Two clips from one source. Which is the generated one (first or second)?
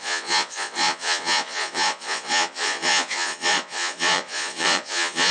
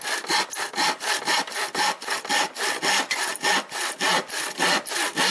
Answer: first